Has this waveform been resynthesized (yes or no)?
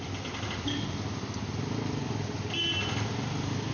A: no